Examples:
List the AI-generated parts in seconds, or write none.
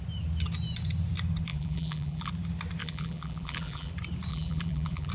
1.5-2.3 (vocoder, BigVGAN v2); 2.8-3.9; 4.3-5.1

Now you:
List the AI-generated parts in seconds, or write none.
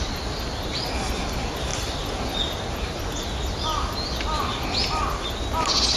none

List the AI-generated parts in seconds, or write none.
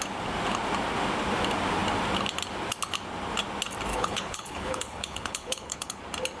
3.9-6.0 (codec, HILCodec)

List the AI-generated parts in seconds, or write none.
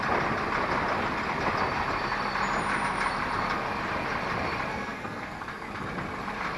4.7-5.4 (codec, SNAC)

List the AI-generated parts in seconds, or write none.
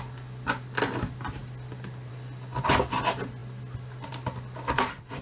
none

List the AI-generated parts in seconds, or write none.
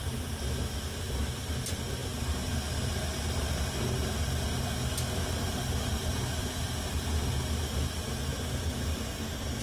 none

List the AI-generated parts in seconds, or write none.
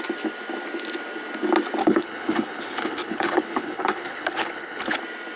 1.8-5.0 (codec, HILCodec)